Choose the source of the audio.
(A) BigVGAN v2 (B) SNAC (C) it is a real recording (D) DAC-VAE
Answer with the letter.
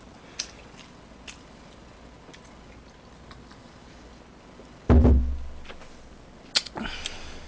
C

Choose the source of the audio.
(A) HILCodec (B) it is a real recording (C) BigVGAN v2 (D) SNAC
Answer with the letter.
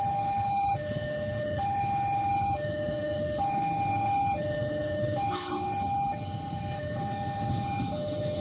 A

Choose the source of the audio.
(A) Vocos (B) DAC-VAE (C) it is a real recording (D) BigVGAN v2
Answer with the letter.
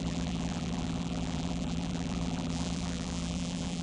D